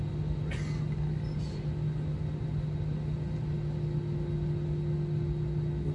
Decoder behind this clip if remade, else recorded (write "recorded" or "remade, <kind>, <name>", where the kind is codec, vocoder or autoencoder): recorded